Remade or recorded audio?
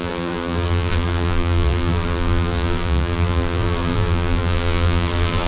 remade